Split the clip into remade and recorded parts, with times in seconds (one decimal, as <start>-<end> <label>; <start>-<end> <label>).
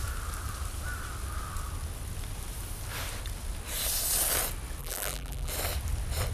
0.0-4.8 recorded; 4.8-5.5 remade; 5.5-6.3 recorded